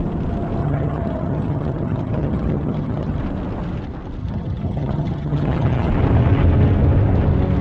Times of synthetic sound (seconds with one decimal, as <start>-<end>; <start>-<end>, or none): 0.6-3.2; 4.2-5.9